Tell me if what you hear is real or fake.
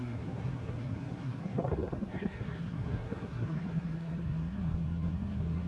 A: fake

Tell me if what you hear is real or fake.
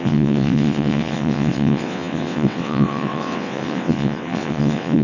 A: fake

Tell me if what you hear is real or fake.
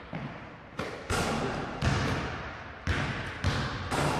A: real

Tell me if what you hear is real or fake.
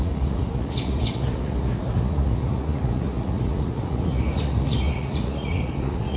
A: fake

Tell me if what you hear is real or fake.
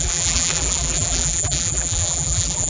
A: fake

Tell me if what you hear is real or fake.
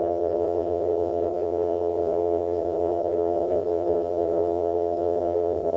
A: fake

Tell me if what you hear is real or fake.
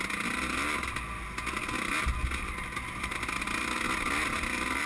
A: real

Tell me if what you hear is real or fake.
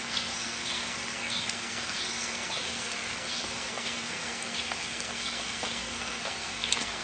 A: fake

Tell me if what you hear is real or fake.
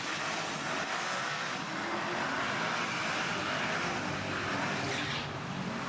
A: real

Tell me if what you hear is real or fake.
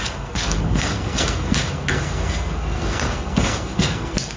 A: fake